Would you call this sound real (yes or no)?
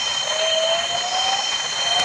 yes